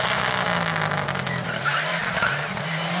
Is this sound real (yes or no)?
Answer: yes